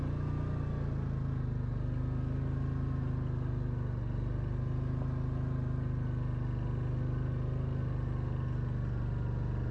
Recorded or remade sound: recorded